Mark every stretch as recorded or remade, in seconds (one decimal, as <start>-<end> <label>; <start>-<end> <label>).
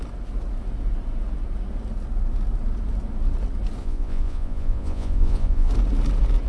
0.0-3.8 recorded; 3.8-5.7 remade; 5.7-6.5 recorded